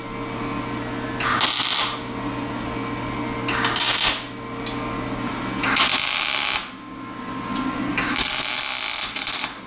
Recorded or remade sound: recorded